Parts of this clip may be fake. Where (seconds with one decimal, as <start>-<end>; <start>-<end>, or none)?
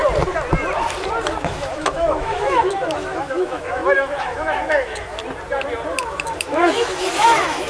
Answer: 1.4-5.2; 6.0-7.7